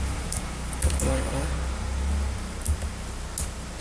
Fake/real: real